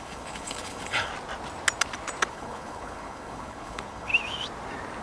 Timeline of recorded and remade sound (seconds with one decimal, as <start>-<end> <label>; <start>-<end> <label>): 0.0-1.1 remade; 1.1-2.3 recorded; 2.3-4.1 remade; 4.1-5.0 recorded